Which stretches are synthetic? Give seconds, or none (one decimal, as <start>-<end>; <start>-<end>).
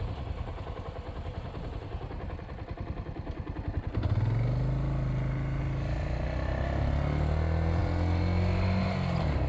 none